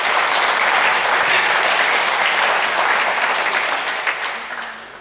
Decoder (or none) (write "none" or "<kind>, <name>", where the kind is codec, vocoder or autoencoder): none